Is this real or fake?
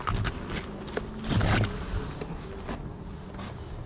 real